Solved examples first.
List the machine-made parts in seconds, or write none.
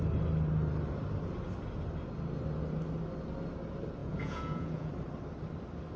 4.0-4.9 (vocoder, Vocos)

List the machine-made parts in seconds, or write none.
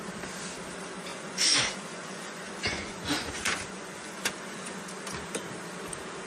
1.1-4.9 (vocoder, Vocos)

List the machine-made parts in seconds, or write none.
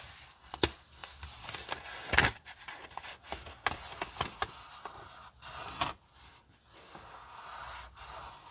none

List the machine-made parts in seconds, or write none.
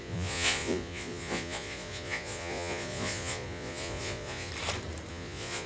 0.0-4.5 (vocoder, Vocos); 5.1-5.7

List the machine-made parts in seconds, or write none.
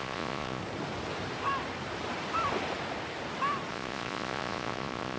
0.0-0.6 (vocoder, Vocos); 3.7-5.2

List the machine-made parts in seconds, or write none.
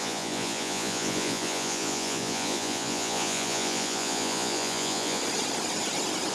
0.0-5.2 (vocoder, Vocos)